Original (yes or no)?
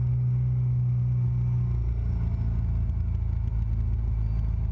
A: yes